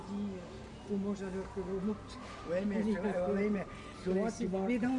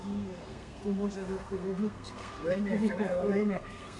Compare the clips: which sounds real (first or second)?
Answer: first